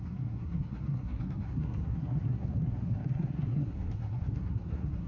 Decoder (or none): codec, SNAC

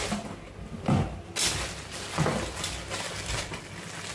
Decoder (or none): none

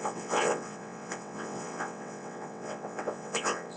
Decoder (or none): vocoder, WaveNeXt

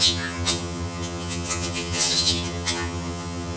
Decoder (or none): vocoder, HiFi-GAN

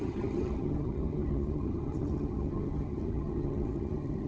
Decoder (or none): vocoder, HiFi-GAN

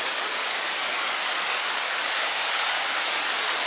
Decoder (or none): codec, DAC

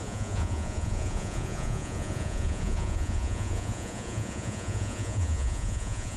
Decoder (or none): vocoder, Vocos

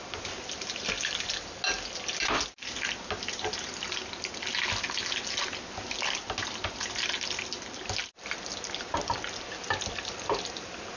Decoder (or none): none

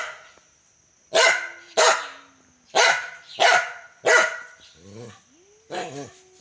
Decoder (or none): none